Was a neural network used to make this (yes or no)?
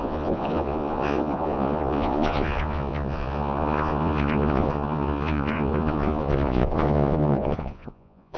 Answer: yes